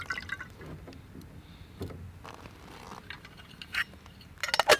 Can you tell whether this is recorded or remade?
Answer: recorded